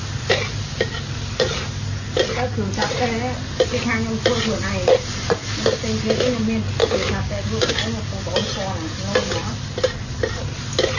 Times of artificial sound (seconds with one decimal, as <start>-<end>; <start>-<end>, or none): 6.8-7.8